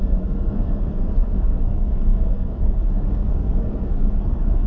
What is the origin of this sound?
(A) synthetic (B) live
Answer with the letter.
A